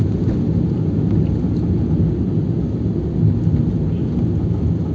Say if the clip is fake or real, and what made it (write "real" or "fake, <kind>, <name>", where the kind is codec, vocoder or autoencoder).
real